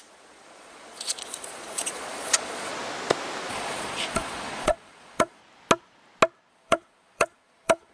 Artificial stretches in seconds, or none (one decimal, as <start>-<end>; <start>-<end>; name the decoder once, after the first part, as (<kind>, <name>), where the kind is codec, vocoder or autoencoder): 0.0-2.7 (vocoder, Vocos); 3.5-5.4; 6.5-7.9